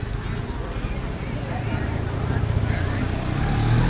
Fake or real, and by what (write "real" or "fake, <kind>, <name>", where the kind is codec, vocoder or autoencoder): real